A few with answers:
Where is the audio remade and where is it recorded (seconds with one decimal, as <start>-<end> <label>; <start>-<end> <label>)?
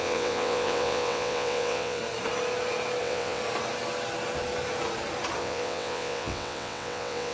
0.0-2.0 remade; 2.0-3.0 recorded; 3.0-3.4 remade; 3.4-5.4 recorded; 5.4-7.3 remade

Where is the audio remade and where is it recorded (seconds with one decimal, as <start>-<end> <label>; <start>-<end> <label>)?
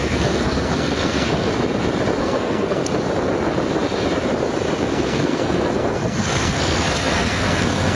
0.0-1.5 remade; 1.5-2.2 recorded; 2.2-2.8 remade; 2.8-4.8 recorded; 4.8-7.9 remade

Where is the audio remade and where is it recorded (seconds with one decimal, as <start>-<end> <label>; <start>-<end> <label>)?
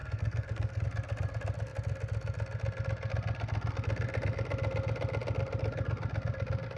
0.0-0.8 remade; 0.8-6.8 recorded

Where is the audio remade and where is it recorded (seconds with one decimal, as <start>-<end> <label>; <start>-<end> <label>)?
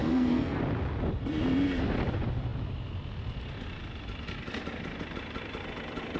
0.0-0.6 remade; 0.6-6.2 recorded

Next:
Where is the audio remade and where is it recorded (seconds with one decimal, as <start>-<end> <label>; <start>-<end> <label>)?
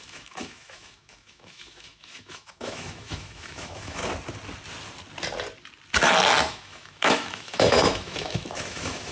0.0-4.0 remade; 4.0-6.5 recorded; 6.5-9.1 remade